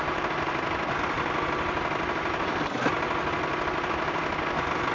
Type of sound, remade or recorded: recorded